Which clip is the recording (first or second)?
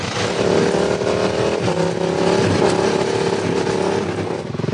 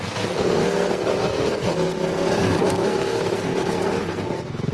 first